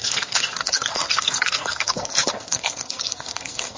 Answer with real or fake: fake